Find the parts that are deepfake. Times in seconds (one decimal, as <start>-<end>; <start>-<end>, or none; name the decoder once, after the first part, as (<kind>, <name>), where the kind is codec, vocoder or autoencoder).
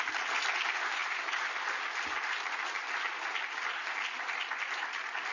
none